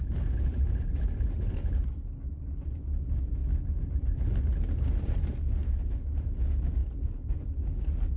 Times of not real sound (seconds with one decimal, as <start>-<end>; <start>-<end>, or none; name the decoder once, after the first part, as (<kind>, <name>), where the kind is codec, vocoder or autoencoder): none